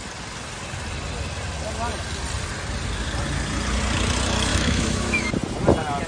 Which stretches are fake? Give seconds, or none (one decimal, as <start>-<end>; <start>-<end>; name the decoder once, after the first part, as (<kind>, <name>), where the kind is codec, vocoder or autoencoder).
4.5-5.3 (autoencoder, DAC-VAE)